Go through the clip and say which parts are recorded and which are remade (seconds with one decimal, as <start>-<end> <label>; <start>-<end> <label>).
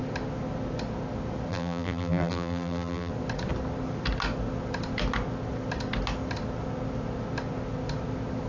0.0-1.5 recorded; 1.5-3.1 remade; 3.1-8.5 recorded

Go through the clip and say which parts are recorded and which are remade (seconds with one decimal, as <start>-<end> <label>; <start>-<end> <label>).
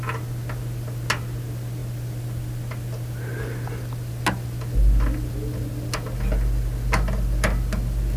0.0-8.2 recorded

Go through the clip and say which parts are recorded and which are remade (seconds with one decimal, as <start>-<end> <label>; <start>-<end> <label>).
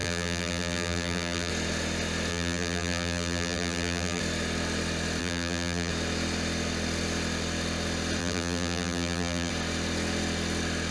0.0-1.5 remade; 1.5-2.3 recorded; 2.3-4.2 remade; 4.2-5.2 recorded; 5.2-5.9 remade; 5.9-8.2 recorded; 8.2-9.5 remade; 9.5-10.9 recorded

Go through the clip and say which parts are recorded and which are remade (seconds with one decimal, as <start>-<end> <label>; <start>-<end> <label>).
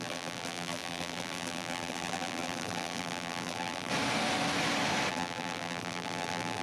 0.0-3.9 remade; 3.9-5.1 recorded; 5.1-6.6 remade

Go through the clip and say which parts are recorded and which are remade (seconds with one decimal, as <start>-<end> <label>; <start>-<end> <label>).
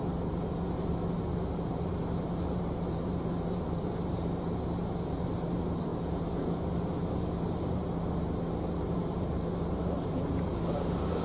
0.0-11.2 remade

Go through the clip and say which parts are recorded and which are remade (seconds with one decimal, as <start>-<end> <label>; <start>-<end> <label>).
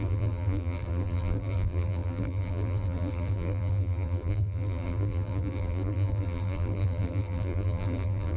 0.0-8.4 remade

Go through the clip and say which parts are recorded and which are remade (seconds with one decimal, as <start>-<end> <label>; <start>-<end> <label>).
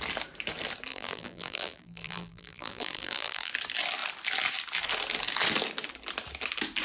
0.0-0.9 recorded; 0.9-3.5 remade; 3.5-6.8 recorded